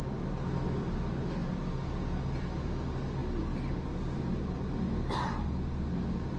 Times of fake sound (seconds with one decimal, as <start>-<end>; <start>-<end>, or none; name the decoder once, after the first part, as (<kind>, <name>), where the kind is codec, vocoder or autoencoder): none